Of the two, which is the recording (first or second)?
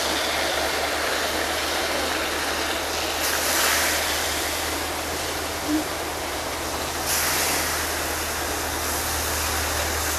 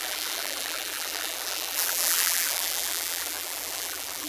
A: first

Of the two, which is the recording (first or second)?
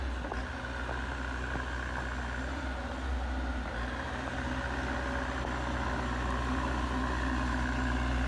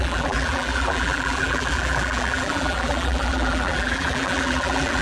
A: first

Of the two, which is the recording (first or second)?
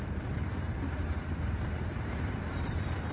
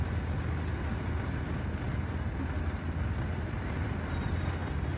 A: second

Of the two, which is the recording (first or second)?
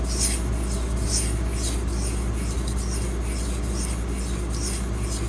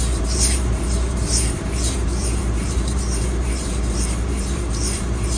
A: first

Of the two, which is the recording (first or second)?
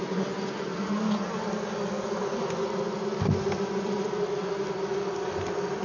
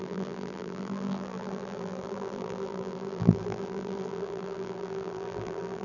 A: first